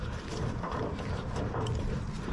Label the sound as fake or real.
fake